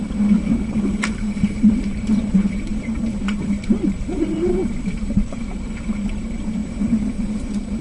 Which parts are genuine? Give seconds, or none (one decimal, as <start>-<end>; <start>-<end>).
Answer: 0.0-0.9